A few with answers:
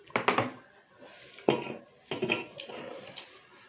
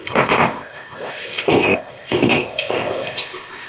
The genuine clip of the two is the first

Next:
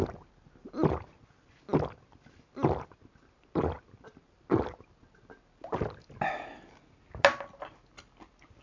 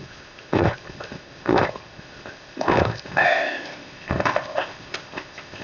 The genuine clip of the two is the first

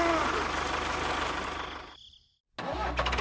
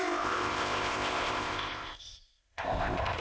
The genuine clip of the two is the first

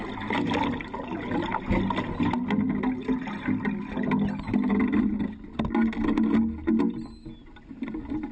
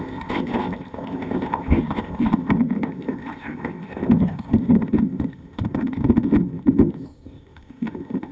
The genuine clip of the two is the first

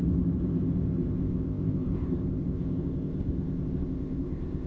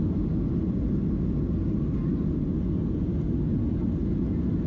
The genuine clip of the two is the second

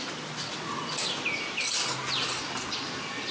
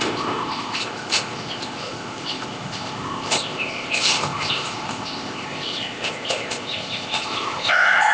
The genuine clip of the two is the first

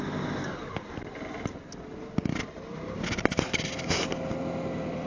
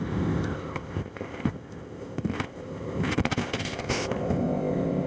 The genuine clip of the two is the first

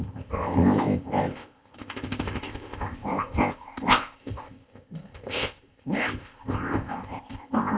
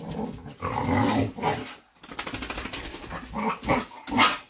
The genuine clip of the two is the second